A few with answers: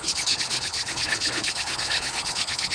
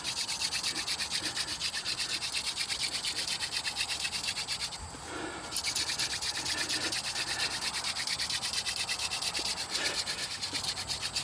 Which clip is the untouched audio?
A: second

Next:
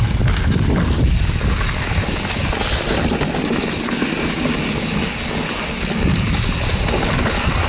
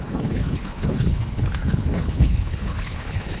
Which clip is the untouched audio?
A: first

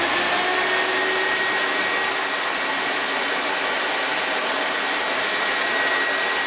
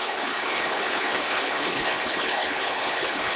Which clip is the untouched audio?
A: first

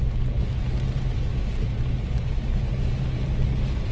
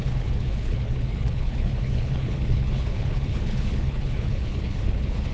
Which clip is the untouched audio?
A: first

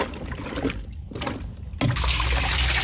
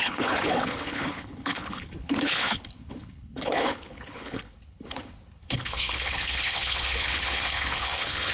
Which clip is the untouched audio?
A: first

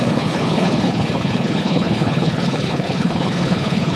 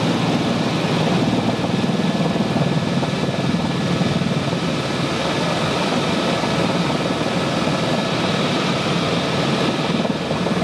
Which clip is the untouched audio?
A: second